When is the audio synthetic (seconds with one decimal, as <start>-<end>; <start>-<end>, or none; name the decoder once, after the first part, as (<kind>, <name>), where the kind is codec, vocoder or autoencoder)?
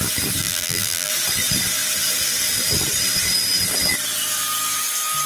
0.4-1.1 (vocoder, BigVGAN v2)